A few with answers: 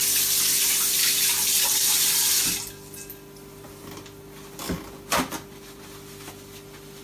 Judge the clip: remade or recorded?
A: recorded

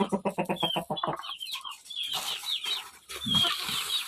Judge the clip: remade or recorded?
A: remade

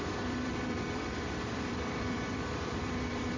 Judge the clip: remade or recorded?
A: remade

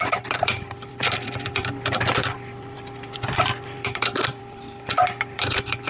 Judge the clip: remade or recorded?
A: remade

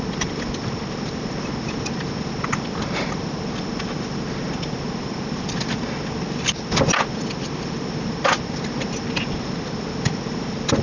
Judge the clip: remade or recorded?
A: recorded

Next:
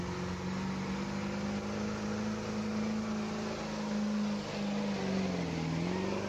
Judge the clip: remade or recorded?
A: recorded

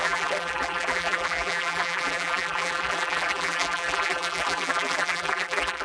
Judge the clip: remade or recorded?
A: remade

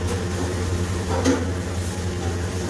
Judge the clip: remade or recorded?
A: recorded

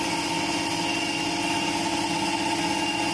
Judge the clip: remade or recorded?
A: recorded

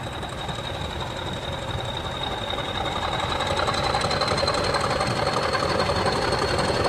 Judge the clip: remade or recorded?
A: recorded